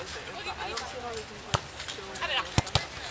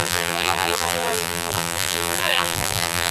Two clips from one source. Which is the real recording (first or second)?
first